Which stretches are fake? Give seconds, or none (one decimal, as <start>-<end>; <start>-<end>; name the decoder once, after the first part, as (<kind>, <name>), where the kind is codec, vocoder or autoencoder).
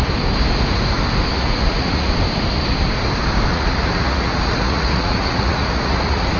1.3-2.1 (vocoder, Vocos); 3.5-6.4